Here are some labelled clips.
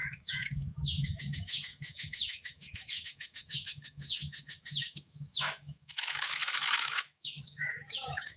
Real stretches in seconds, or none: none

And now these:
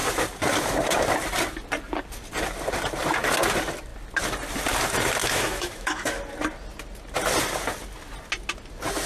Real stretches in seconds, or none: 0.0-5.2; 6.2-9.1